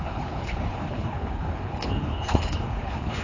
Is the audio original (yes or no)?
no